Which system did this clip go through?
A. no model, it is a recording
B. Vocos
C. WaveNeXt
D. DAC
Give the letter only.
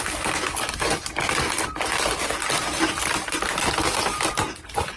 A